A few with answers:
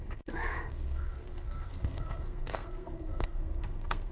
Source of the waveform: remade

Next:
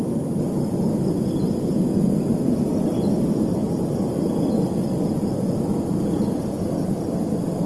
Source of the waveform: recorded